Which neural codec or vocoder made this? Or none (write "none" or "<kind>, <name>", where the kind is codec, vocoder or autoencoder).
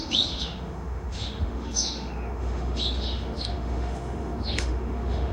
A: autoencoder, DAC-VAE